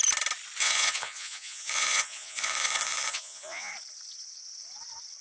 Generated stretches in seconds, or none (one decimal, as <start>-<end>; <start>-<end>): 0.6-3.7